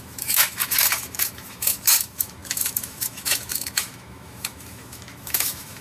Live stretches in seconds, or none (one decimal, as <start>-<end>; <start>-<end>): none